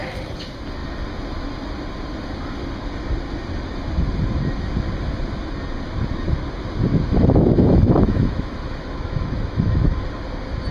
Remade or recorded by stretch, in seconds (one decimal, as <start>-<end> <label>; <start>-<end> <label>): 0.0-6.9 recorded; 6.9-10.0 remade; 10.0-10.7 recorded